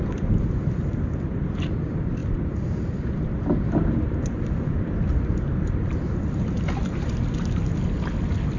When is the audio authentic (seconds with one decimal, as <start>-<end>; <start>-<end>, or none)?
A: 0.0-8.6